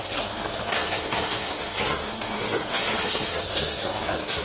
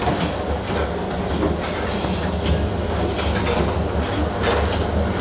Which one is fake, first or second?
first